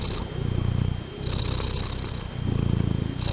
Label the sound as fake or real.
real